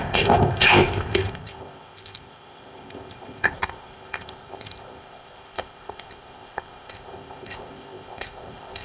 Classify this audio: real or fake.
fake